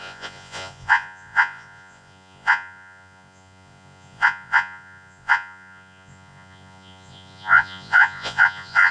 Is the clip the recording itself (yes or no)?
no